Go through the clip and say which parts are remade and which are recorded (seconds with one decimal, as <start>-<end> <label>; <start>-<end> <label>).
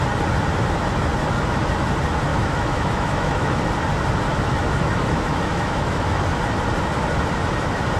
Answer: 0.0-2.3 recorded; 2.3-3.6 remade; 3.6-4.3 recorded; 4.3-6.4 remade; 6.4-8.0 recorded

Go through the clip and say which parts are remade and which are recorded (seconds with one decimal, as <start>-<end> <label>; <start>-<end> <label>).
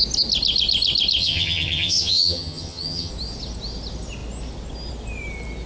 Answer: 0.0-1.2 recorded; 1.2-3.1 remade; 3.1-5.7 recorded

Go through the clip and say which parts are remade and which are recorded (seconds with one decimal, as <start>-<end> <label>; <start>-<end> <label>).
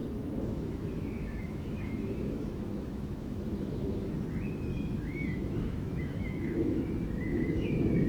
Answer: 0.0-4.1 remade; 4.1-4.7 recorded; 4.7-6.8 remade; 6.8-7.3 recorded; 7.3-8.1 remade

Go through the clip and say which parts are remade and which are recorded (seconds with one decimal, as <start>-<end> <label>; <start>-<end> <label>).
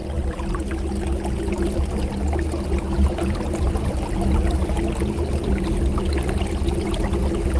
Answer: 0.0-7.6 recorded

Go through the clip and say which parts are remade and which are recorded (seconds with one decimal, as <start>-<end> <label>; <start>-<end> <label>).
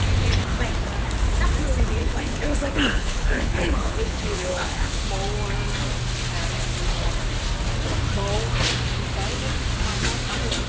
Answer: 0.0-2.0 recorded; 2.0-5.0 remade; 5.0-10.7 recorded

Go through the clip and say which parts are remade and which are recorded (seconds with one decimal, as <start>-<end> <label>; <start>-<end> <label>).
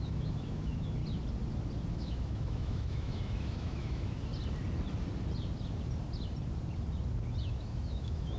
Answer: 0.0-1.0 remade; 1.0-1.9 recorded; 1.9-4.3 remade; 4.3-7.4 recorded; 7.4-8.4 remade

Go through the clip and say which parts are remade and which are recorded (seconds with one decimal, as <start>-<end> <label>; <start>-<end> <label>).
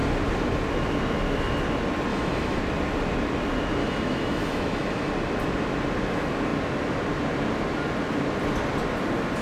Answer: 0.0-2.1 recorded; 2.1-2.6 remade; 2.6-3.8 recorded; 3.8-5.1 remade; 5.1-9.4 recorded